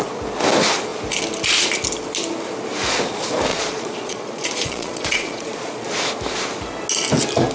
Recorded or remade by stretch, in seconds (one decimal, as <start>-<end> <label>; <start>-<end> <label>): 0.0-3.5 recorded; 3.5-5.9 remade; 5.9-7.5 recorded